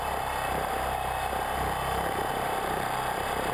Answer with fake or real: real